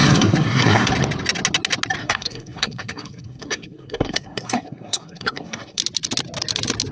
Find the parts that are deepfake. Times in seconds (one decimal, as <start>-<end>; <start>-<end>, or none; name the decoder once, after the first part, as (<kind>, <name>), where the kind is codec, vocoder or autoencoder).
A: 0.0-0.9 (codec, SNAC); 2.0-5.8